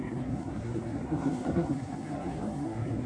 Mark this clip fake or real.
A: fake